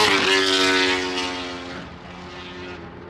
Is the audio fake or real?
real